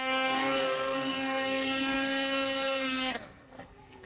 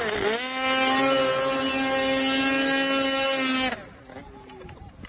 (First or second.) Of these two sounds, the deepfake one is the first